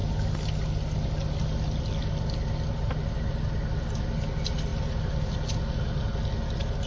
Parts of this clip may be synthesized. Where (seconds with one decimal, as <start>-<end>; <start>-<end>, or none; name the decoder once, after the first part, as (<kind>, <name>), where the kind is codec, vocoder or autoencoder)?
none